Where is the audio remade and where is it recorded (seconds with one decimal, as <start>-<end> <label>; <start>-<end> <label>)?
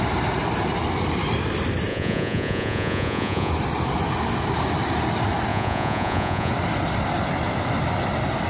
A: 0.0-1.9 recorded; 1.9-3.5 remade; 3.5-5.5 recorded; 5.5-6.5 remade; 6.5-8.5 recorded